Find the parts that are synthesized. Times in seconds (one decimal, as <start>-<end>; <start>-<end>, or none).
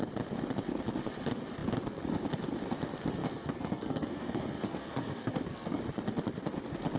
3.2-5.8